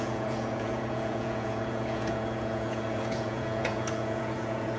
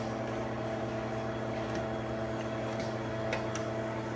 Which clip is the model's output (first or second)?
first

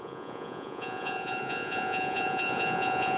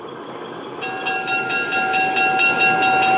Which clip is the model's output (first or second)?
first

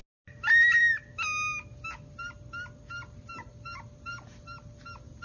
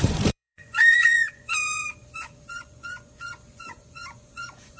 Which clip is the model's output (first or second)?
second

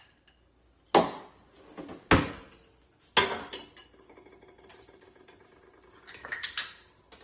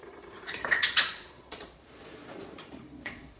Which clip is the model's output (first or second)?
second